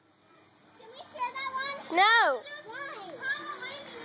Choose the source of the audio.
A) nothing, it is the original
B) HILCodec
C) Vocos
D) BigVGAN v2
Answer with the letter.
A